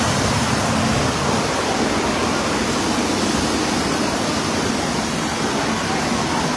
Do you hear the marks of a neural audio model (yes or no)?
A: no